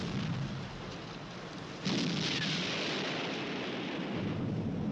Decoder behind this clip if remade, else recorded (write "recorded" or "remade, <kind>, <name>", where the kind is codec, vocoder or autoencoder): recorded